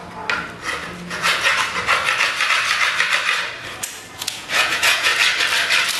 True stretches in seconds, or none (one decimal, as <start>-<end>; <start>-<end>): 0.0-1.1; 1.5-4.1; 5.1-6.0